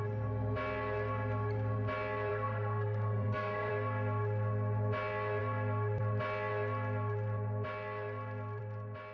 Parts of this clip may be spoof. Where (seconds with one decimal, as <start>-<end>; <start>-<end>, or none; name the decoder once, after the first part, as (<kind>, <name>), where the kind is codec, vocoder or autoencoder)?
2.3-3.7 (codec, SNAC)